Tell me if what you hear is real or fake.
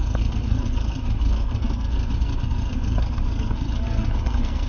fake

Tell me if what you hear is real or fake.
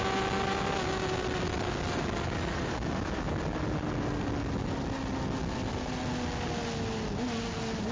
real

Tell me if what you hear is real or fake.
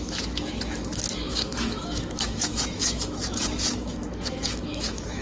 fake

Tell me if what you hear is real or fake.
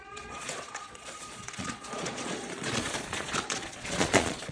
fake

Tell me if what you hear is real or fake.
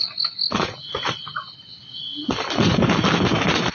real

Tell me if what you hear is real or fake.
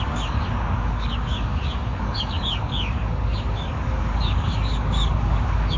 fake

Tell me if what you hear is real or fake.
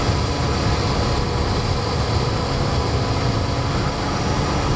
real